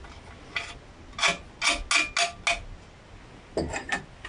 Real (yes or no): yes